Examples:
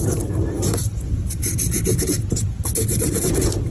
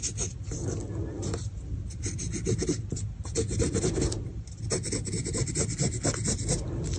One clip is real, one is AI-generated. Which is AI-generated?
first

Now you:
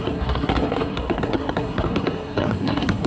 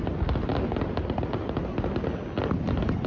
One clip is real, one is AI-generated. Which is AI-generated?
first